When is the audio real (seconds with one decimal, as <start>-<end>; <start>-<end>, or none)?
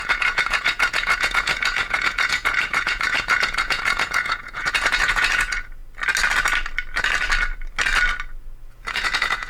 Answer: 5.8-8.7